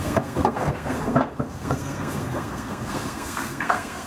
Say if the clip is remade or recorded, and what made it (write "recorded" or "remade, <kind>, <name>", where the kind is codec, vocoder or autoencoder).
remade, codec, SNAC